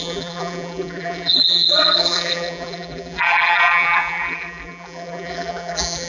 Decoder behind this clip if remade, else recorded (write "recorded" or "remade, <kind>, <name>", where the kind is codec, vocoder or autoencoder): remade, vocoder, BigVGAN v2